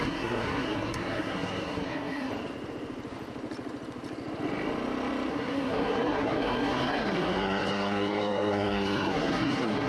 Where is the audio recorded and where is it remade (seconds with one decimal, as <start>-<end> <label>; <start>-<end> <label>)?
0.0-2.3 remade; 2.3-5.3 recorded; 5.3-9.9 remade